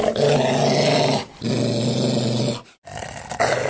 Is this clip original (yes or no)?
yes